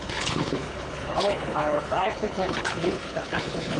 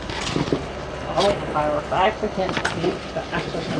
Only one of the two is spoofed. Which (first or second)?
first